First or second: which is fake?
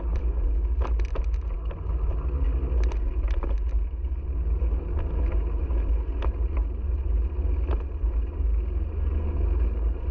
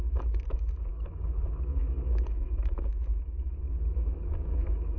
second